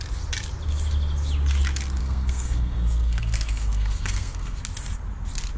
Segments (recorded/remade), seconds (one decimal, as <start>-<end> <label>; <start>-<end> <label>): 0.0-2.0 recorded; 2.0-4.6 remade; 4.6-5.6 recorded